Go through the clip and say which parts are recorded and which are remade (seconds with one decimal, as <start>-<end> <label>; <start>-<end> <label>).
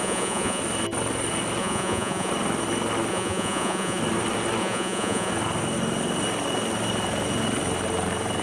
0.0-0.6 remade; 0.6-1.6 recorded; 1.6-2.3 remade; 2.3-3.1 recorded; 3.1-4.0 remade; 4.0-4.6 recorded; 4.6-5.3 remade; 5.3-8.4 recorded